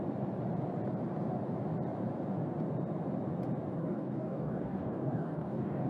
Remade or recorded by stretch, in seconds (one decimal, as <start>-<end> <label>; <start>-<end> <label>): 0.0-3.8 recorded; 3.8-5.9 remade